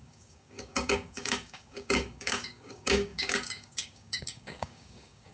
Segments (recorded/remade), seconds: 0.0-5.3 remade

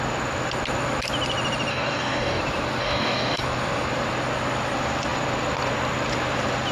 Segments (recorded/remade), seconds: 0.0-1.7 recorded; 1.7-2.4 remade; 2.4-2.8 recorded; 2.8-3.4 remade; 3.4-6.7 recorded